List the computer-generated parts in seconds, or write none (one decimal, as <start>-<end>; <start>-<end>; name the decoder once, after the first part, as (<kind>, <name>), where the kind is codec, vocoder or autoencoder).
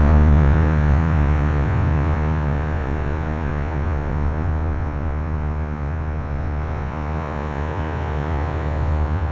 0.0-9.3 (vocoder, Vocos)